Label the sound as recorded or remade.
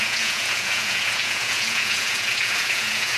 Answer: remade